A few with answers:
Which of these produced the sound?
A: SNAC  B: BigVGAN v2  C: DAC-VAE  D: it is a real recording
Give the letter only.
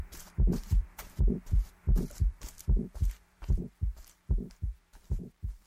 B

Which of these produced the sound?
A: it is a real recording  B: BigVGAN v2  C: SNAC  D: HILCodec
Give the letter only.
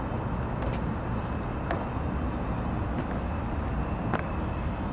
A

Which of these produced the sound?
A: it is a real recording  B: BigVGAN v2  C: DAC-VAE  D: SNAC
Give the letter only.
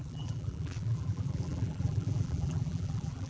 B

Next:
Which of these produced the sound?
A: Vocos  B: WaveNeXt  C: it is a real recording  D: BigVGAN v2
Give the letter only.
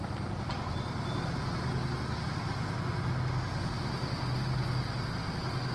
C